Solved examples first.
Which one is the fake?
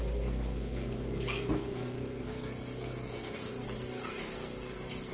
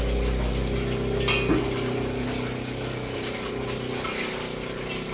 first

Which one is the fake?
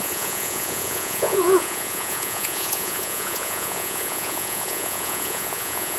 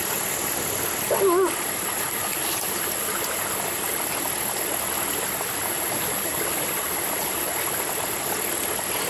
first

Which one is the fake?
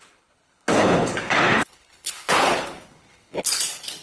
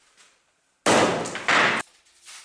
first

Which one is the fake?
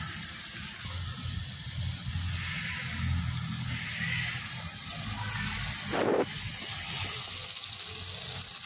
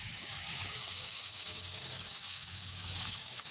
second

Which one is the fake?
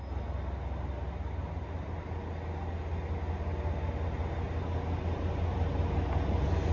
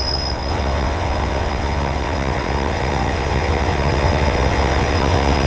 second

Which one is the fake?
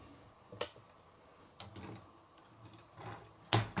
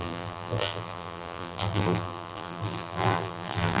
second